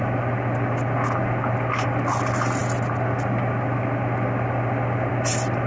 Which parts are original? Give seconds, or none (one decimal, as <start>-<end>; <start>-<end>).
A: 0.0-5.7